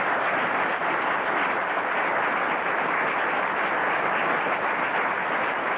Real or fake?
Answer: real